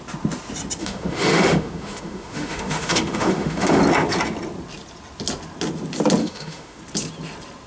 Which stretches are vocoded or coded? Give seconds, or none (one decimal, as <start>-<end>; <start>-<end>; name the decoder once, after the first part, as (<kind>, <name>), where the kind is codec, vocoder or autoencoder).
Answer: 0.8-3.8 (autoencoder, DAC-VAE); 6.2-6.8

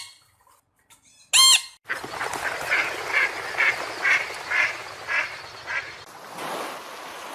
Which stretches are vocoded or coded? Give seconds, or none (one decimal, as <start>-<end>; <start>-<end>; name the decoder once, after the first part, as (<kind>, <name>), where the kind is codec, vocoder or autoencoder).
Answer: none

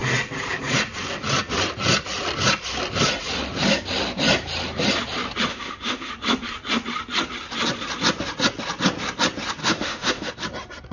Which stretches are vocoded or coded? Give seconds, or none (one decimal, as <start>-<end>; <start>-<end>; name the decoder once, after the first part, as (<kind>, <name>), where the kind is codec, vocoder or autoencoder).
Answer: 5.5-6.1 (autoencoder, DAC-VAE); 9.6-10.3